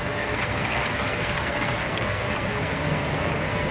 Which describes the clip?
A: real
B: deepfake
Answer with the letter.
B